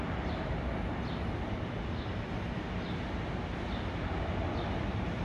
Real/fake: real